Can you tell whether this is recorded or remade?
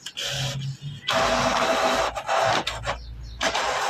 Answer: recorded